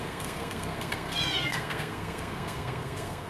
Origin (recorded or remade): remade